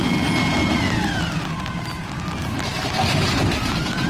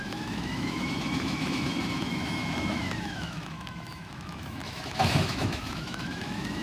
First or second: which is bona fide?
first